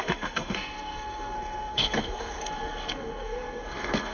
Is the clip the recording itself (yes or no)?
no